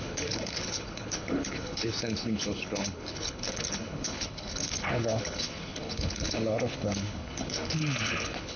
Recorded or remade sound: remade